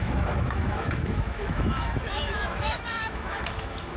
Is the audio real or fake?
fake